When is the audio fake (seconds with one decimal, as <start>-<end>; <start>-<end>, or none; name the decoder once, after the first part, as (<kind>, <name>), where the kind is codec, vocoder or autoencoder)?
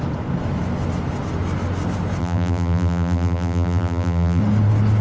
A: 2.2-4.4 (vocoder, BigVGAN v2)